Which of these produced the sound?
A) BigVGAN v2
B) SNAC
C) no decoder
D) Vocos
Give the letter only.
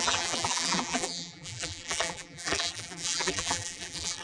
A